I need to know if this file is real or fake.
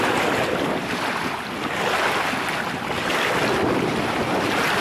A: real